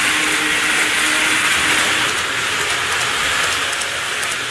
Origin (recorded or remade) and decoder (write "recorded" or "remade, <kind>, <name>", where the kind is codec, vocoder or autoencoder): recorded